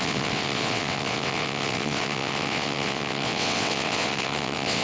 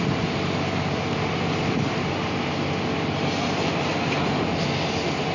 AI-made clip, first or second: first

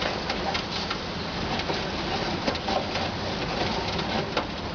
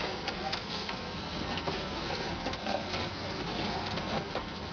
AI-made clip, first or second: second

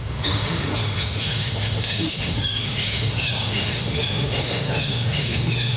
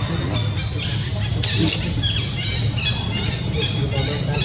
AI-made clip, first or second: first